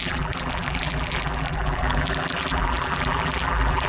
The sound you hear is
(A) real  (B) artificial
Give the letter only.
B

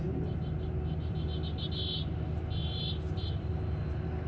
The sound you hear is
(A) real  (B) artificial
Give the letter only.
A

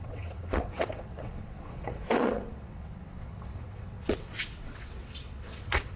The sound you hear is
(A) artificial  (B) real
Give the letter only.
A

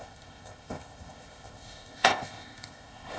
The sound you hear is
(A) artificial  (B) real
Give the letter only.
A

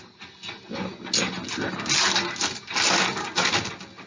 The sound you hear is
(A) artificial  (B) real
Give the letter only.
B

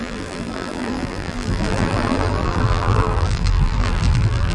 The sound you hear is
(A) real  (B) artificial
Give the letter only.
B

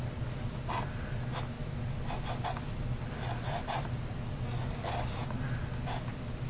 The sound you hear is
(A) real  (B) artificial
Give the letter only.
A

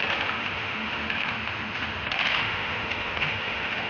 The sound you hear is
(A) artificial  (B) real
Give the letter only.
A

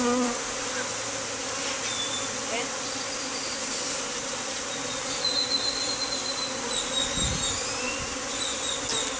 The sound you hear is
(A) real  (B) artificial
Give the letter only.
A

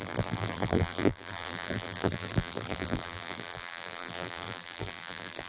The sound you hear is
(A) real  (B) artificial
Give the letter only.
B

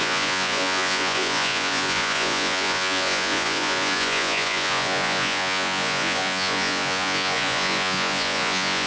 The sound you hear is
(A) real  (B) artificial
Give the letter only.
B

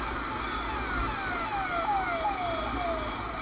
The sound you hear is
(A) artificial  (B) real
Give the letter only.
B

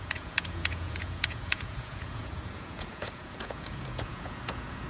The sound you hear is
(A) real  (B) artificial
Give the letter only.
B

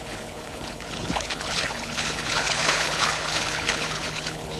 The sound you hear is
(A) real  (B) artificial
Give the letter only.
B